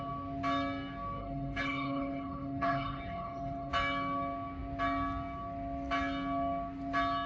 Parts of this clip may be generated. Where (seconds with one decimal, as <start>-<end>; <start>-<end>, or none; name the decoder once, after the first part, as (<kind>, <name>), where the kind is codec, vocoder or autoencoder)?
1.2-3.7 (codec, HILCodec)